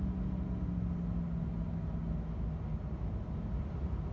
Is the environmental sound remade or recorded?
recorded